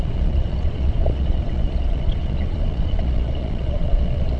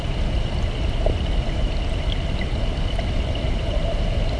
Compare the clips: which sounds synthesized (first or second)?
first